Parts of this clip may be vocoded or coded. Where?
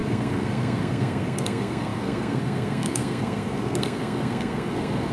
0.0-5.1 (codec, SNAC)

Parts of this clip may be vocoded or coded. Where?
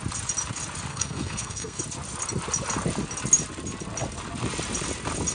0.9-1.8 (codec, SNAC)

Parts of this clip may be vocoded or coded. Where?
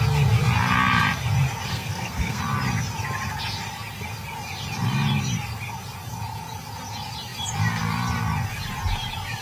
1.7-2.4 (codec, SNAC)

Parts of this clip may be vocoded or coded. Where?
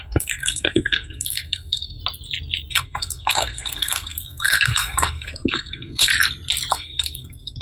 0.0-2.0 (codec, SNAC); 2.7-6.1; 6.7-7.6